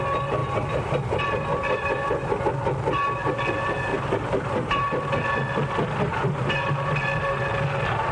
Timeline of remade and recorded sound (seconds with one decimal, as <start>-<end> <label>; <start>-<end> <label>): 0.0-0.4 recorded; 0.4-2.4 remade; 2.4-3.9 recorded; 3.9-4.8 remade; 4.8-6.1 recorded; 6.1-6.7 remade; 6.7-8.1 recorded